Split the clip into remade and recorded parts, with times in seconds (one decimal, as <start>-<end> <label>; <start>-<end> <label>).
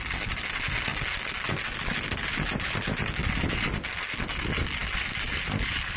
0.0-6.0 recorded